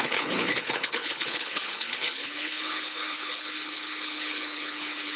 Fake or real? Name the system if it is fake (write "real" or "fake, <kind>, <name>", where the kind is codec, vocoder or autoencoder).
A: fake, codec, HILCodec